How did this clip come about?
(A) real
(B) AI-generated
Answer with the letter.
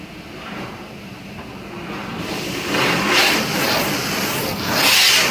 A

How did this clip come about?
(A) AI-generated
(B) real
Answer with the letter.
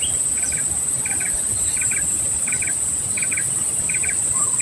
B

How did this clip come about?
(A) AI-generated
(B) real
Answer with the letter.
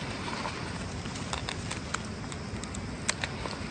B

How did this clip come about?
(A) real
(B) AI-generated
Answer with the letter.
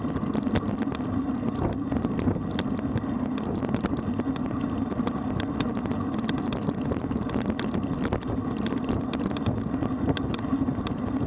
A